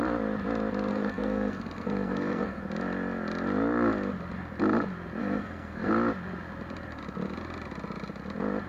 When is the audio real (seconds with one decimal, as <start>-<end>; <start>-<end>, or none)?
0.0-0.9; 2.6-5.2; 5.9-8.7

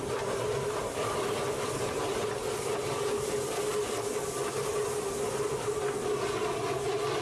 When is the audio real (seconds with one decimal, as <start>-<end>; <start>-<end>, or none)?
0.0-7.2

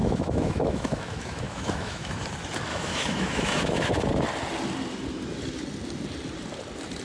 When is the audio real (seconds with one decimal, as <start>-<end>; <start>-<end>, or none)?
2.1-2.7; 3.9-7.0

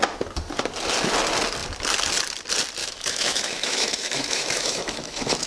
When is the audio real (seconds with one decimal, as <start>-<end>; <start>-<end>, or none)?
0.0-2.8

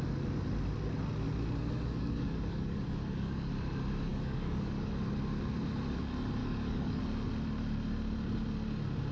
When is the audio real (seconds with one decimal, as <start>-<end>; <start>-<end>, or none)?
0.0-1.6; 3.5-4.1; 4.9-6.4; 7.0-9.1

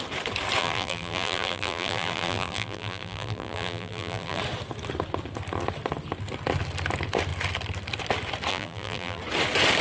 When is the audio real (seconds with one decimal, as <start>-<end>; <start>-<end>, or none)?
0.0-0.6; 4.4-8.5; 9.2-9.8

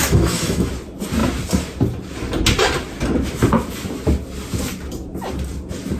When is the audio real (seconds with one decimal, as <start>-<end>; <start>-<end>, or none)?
0.7-6.0